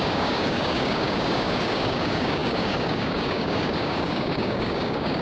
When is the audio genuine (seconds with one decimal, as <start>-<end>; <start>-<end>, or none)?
none